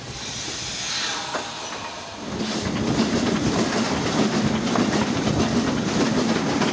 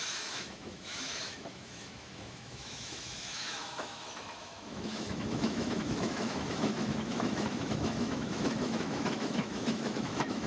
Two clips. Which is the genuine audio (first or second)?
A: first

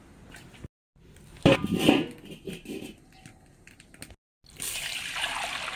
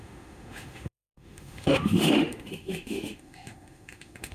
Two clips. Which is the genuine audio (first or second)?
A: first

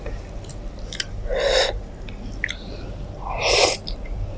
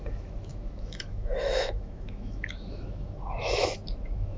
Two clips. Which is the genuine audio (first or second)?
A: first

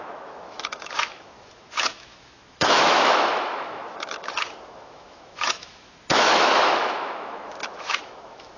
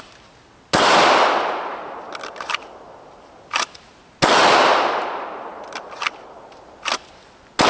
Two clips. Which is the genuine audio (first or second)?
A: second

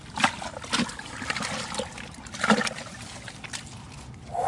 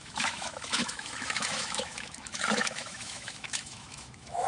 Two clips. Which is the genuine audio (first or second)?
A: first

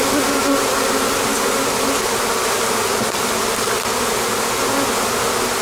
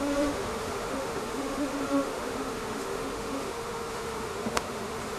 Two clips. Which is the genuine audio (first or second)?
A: first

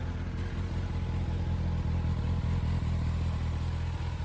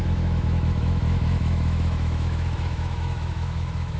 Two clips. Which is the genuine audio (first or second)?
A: first